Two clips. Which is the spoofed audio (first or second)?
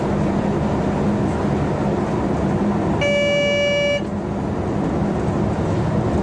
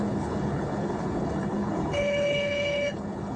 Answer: second